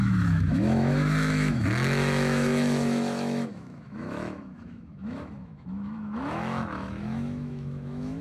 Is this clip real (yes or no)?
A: no